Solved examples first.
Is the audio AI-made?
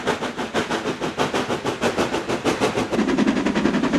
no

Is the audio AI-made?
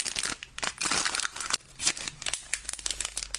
no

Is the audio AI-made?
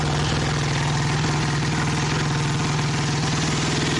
no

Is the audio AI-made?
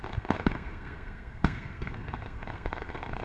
yes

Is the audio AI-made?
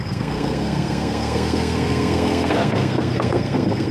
yes